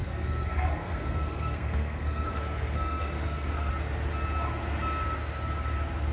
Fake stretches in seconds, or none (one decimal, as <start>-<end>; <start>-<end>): 0.0-3.7